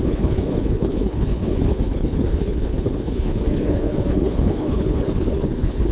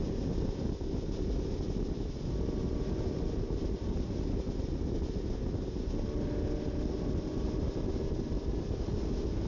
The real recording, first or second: second